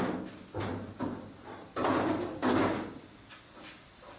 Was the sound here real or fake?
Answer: real